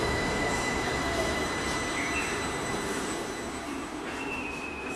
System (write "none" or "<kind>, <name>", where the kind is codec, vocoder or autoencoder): none